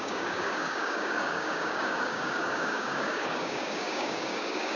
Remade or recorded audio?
remade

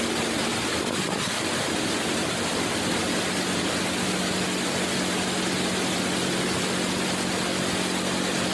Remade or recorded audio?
recorded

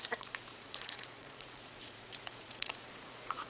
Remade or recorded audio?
remade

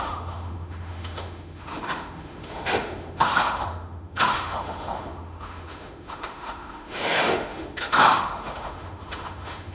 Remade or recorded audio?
remade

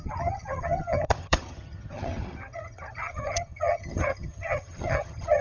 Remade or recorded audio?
remade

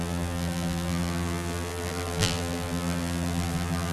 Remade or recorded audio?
remade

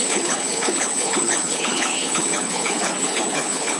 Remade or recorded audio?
remade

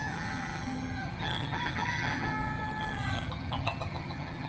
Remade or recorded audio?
remade